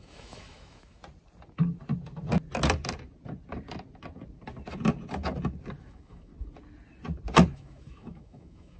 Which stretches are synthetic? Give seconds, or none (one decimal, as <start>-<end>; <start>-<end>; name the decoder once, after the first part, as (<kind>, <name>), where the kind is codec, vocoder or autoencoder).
0.0-1.0 (autoencoder, DAC-VAE); 5.8-6.3; 7.5-8.8